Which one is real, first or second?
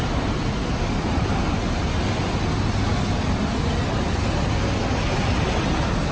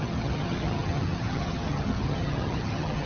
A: first